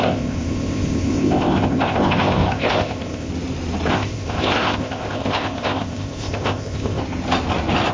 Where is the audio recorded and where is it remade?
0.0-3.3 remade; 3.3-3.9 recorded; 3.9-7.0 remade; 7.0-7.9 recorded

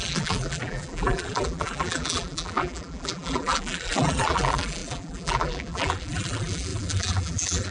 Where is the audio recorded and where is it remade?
0.0-7.7 remade

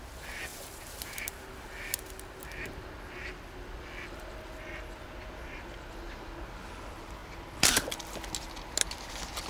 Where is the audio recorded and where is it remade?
0.0-0.5 recorded; 0.5-1.4 remade; 1.4-9.5 recorded

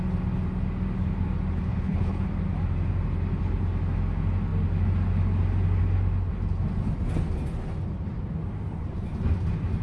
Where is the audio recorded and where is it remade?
0.0-1.7 recorded; 1.7-2.3 remade; 2.3-9.8 recorded

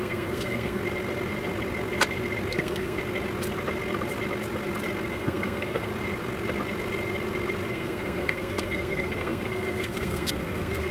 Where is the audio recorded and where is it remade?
0.0-0.8 remade; 0.8-2.5 recorded; 2.5-3.0 remade; 3.0-5.1 recorded; 5.1-5.9 remade; 5.9-7.7 recorded; 7.7-10.9 remade

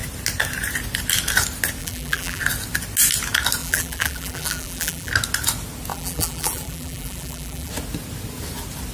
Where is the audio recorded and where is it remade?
0.0-1.8 recorded; 1.8-2.4 remade; 2.4-3.6 recorded; 3.6-5.1 remade; 5.1-5.9 recorded; 5.9-7.7 remade; 7.7-8.9 recorded

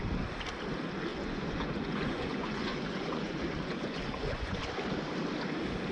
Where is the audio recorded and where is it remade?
0.0-1.1 recorded; 1.1-4.6 remade; 4.6-5.9 recorded